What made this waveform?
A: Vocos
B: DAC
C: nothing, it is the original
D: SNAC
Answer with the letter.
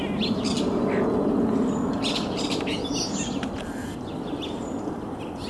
C